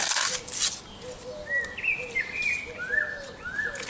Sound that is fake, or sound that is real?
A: real